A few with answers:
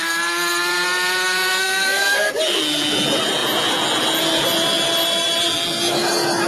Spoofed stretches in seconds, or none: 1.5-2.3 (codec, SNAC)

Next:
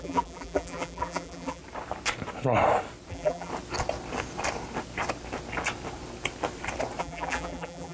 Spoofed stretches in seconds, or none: 0.0-1.6 (vocoder, BigVGAN v2); 3.1-3.5; 7.0-7.9